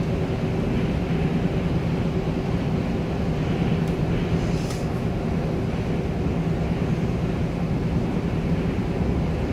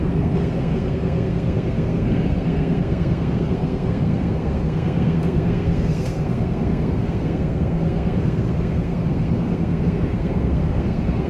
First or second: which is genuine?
first